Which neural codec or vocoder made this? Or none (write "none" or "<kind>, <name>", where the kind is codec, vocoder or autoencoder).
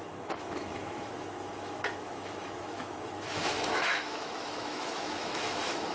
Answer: autoencoder, DAC-VAE